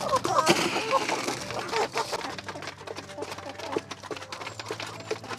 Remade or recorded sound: recorded